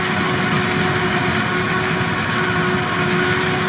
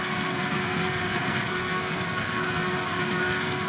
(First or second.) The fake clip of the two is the second